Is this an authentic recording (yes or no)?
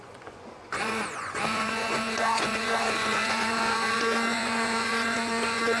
no